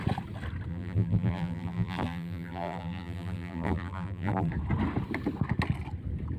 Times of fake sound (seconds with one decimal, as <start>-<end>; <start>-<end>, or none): 0.7-4.5